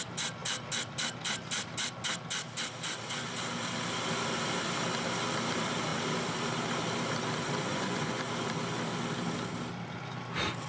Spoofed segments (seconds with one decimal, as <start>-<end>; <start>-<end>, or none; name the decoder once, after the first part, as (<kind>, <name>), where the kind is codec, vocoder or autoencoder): 7.7-8.2 (vocoder, Vocos)